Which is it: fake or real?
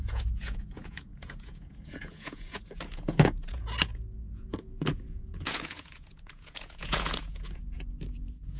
fake